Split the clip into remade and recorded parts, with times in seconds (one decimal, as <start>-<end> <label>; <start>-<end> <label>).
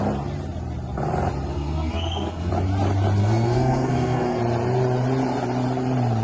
0.0-1.5 recorded; 1.5-2.5 remade; 2.5-3.2 recorded; 3.2-4.4 remade; 4.4-6.2 recorded